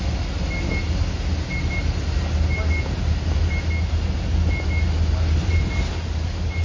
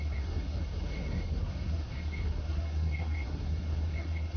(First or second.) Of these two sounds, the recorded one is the first